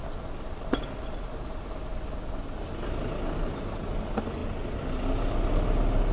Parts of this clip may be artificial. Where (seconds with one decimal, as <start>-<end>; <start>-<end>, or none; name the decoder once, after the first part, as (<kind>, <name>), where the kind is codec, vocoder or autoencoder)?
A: none